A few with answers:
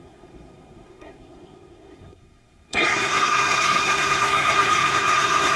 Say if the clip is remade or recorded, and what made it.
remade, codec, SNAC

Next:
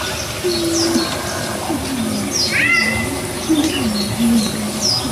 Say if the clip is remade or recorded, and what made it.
recorded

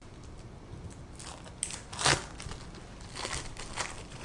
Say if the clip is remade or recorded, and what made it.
recorded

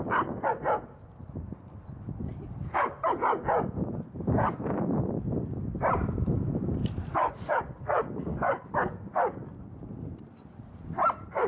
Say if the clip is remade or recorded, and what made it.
recorded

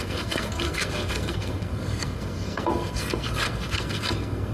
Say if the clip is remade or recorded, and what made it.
remade, codec, SNAC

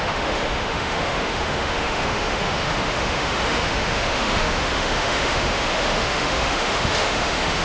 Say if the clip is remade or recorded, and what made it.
remade, autoencoder, DAC-VAE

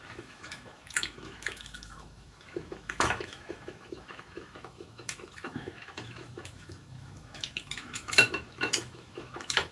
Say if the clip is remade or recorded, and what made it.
remade, autoencoder, DAC-VAE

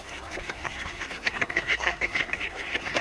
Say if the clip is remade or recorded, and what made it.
remade, codec, SNAC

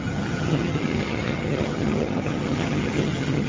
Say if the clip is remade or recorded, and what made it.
remade, vocoder, HiFi-GAN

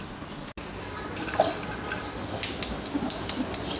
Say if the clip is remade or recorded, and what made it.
recorded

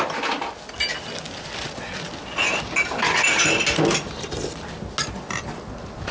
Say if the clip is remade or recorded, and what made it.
recorded